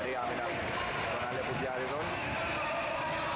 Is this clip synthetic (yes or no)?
no